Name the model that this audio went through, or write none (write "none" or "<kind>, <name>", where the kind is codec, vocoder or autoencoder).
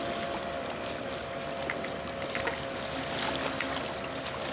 none